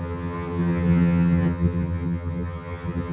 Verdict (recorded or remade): remade